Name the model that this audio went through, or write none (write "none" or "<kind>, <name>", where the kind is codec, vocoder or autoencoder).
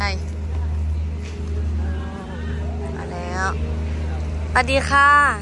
none